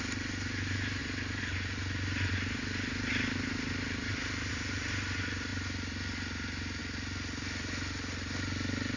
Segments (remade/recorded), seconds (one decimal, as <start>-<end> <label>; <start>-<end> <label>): 0.0-9.0 recorded